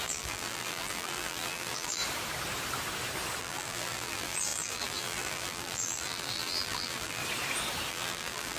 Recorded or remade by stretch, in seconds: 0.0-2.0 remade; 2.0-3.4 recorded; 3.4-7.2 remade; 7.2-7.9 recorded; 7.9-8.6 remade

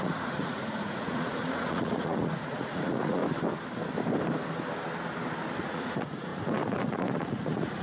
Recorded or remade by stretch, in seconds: 0.0-3.2 remade; 3.2-5.6 recorded; 5.6-7.8 remade

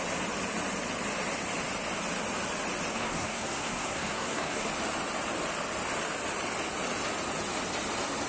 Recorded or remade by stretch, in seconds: 0.0-2.9 recorded; 2.9-4.7 remade; 4.7-8.3 recorded

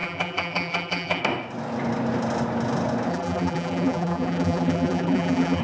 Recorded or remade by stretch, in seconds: 0.0-1.2 remade; 1.2-3.1 recorded; 3.1-5.6 remade

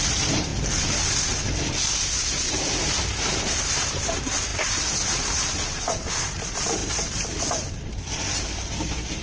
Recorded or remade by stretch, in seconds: 0.0-0.5 remade; 0.5-2.2 recorded; 2.2-9.2 remade